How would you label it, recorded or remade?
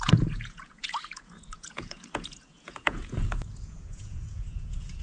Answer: remade